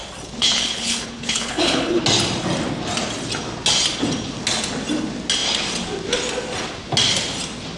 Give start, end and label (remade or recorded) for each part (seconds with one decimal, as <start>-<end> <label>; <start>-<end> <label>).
0.0-0.4 recorded; 0.4-2.0 remade; 2.0-7.8 recorded